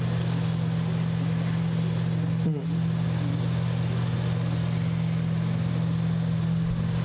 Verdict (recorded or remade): recorded